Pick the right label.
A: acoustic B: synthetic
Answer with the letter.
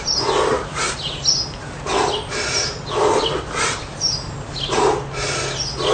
A